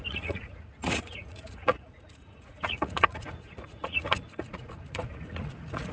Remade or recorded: remade